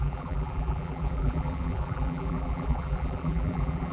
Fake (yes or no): yes